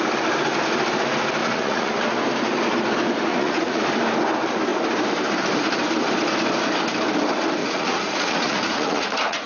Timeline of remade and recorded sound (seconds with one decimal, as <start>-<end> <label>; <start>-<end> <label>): 0.0-1.4 recorded; 1.4-1.9 remade; 1.9-3.3 recorded; 3.3-3.8 remade; 3.8-7.6 recorded; 7.6-9.5 remade